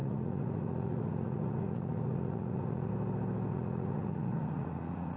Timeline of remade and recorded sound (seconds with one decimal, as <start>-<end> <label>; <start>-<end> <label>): 0.0-2.9 remade; 2.9-3.5 recorded; 3.5-5.2 remade